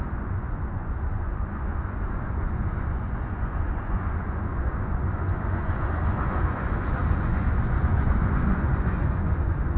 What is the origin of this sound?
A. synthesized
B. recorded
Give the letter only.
A